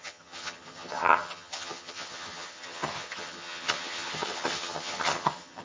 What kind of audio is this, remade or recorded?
remade